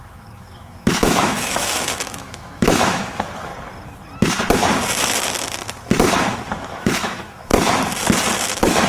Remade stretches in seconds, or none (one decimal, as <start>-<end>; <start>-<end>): 0.0-3.5; 6.6-7.5; 8.5-8.9